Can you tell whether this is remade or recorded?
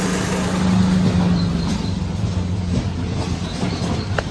recorded